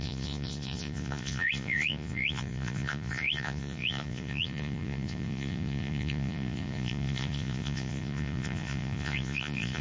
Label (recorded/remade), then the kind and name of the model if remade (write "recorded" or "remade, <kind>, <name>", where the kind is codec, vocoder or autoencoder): remade, vocoder, Vocos